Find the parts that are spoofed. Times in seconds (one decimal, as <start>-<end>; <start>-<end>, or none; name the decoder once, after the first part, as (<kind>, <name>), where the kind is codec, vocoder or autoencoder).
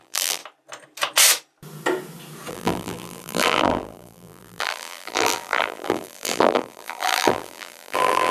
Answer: 0.0-0.4 (vocoder, BigVGAN v2); 2.5-8.3